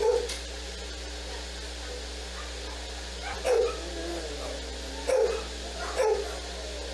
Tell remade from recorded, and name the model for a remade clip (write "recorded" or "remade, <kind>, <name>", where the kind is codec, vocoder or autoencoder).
recorded